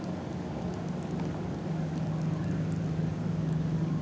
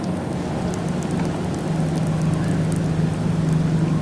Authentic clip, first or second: second